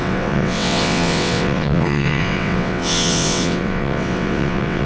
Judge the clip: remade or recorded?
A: remade